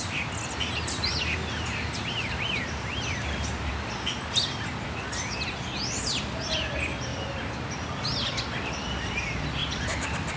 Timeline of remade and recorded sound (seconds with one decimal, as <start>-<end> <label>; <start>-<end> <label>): 0.0-2.9 recorded; 2.9-3.7 remade; 3.7-7.1 recorded; 7.1-8.7 remade; 8.7-9.6 recorded; 9.6-10.4 remade